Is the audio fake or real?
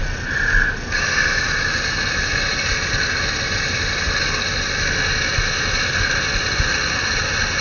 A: real